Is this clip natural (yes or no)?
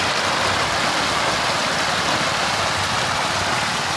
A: yes